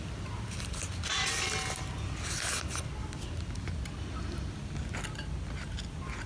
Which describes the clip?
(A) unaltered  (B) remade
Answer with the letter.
A